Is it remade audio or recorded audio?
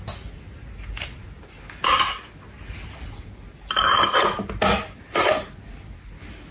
recorded